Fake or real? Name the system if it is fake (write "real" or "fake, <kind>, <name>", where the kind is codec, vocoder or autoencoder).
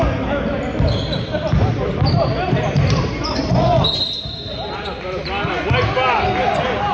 real